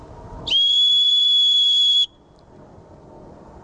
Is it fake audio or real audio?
fake